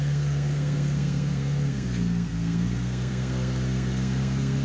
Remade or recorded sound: remade